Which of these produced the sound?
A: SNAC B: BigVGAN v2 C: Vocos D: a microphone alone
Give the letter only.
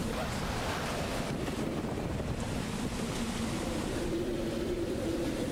B